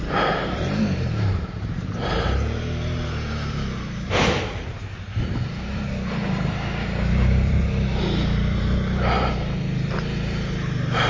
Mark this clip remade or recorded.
remade